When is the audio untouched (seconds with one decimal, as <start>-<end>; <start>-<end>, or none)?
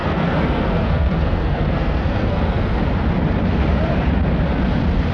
2.8-5.1